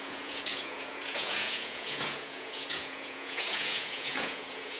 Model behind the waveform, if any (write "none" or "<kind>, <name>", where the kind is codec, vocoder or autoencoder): vocoder, Vocos